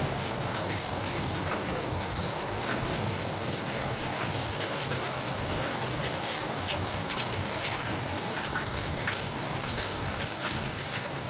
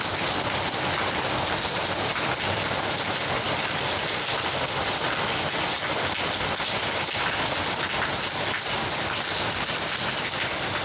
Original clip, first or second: second